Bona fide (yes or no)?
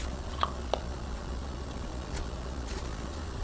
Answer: no